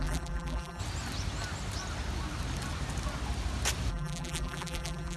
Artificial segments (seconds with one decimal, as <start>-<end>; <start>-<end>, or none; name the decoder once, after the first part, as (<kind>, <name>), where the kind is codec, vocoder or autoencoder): 0.0-0.8 (vocoder, BigVGAN v2); 3.9-5.2